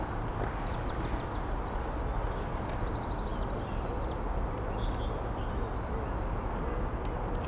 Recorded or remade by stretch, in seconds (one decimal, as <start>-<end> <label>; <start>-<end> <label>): 0.0-7.5 recorded